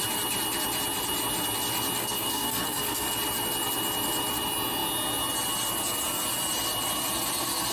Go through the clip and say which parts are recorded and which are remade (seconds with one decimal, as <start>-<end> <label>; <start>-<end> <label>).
0.0-2.0 recorded; 2.0-3.1 remade; 3.1-7.7 recorded